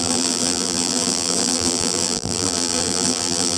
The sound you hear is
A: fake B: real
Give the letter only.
A